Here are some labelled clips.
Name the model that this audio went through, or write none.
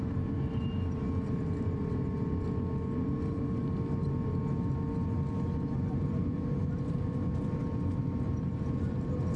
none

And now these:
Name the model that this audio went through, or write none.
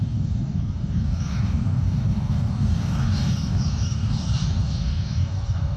codec, DAC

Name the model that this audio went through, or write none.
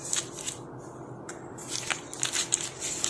none